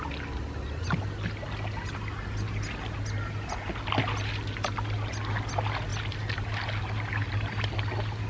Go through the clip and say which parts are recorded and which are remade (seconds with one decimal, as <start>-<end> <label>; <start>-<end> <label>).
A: 0.0-8.3 recorded